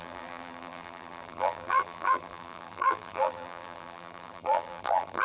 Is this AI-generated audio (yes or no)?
yes